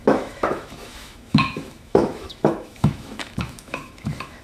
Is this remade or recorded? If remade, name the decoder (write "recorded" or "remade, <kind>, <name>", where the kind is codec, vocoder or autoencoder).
remade, autoencoder, DAC-VAE